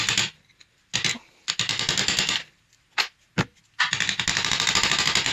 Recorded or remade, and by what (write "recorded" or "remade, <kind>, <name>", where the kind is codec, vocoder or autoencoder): recorded